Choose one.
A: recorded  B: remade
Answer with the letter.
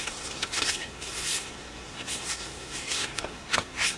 B